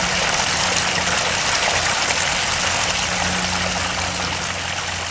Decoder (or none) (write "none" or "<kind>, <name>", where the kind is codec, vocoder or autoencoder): none